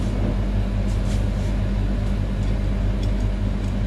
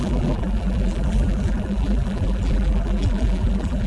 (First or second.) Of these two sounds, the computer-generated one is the second